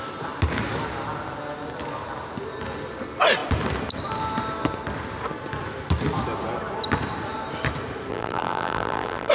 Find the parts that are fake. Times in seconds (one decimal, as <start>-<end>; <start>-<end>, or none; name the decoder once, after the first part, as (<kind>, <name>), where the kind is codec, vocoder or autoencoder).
8.1-9.3 (vocoder, BigVGAN v2)